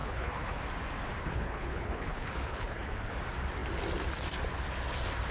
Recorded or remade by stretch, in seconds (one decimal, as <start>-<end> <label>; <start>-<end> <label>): 0.0-0.6 remade; 0.6-1.2 recorded; 1.2-3.1 remade; 3.1-5.3 recorded